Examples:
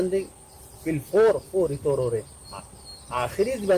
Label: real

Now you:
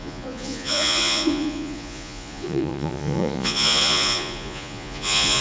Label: fake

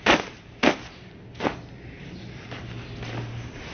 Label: real